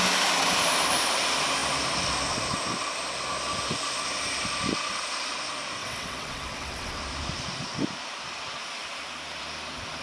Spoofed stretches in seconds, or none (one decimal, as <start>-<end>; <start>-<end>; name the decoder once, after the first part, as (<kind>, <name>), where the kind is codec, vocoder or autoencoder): 5.8-7.0 (vocoder, WaveNeXt)